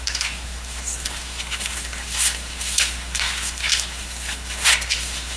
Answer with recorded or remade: remade